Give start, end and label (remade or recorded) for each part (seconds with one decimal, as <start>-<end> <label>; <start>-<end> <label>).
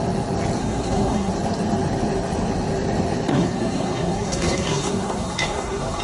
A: 0.0-0.6 recorded; 0.6-1.3 remade; 1.3-3.3 recorded; 3.3-6.0 remade